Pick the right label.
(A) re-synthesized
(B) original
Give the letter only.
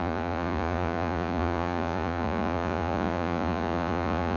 A